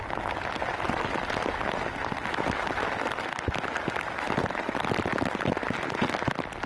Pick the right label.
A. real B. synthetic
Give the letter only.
A